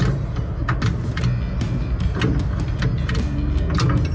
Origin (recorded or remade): recorded